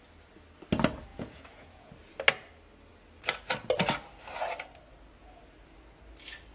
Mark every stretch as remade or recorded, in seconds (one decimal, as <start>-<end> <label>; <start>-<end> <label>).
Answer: 0.0-1.1 recorded; 1.1-1.9 remade; 1.9-6.5 recorded